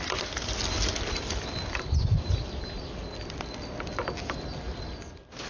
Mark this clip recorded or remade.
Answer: recorded